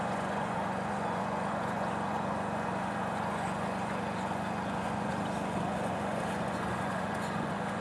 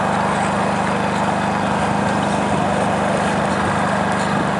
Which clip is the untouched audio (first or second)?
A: second